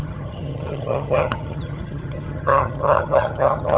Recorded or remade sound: remade